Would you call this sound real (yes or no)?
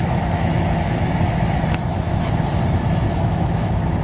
no